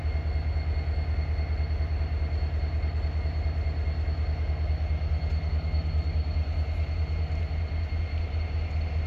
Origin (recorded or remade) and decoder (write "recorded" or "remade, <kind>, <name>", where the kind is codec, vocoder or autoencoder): recorded